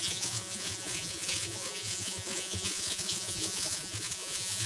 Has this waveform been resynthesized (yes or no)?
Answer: yes